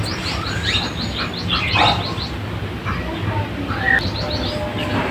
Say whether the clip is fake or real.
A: real